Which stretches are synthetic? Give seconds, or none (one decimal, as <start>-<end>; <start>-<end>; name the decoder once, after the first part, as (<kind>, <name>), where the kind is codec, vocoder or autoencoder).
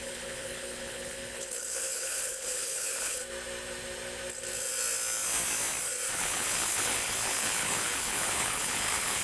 0.0-3.2 (codec, HILCodec); 6.1-9.2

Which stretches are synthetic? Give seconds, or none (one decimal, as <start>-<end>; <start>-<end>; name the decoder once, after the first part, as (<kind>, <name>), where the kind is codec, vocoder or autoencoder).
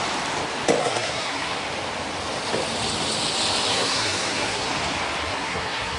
0.8-1.6 (codec, SNAC); 3.7-4.7; 5.2-6.0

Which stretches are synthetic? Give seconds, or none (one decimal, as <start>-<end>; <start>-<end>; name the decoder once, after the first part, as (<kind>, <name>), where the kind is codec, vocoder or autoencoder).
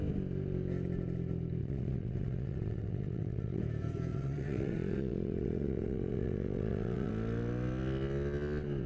1.6-3.6 (vocoder, WaveNeXt); 4.1-7.1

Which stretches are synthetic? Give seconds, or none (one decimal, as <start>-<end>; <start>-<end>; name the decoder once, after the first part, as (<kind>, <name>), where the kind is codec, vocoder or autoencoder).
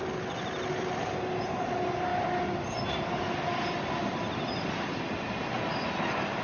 none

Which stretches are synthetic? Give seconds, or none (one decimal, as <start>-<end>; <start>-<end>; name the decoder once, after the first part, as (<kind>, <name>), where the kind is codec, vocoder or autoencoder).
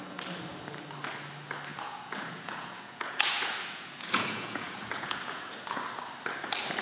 1.7-5.8 (vocoder, Vocos)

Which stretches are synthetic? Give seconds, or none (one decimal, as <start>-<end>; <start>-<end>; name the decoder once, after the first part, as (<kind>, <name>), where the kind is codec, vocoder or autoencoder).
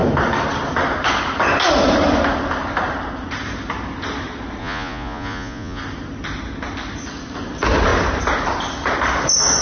4.6-5.8 (vocoder, Vocos)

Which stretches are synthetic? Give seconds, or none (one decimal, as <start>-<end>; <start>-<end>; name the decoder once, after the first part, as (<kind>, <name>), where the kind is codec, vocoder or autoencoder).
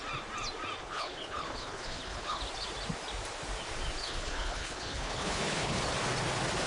0.8-2.4 (codec, HILCodec); 4.0-5.8